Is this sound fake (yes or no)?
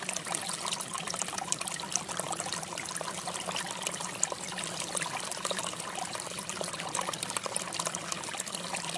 no